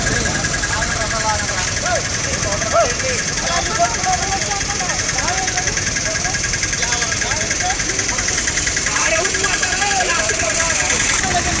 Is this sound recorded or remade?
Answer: remade